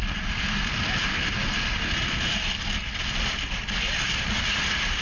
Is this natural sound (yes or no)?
yes